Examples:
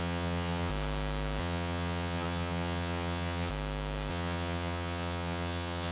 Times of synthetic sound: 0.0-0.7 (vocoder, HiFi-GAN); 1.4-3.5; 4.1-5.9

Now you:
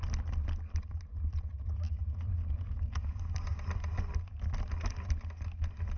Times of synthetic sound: none

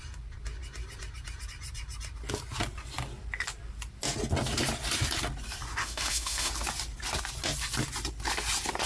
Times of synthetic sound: 5.8-6.5 (autoencoder, DAC-VAE)